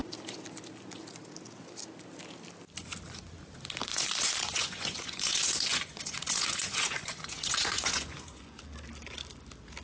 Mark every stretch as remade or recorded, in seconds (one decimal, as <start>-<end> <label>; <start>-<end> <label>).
0.0-3.9 recorded; 3.9-8.6 remade; 8.6-9.8 recorded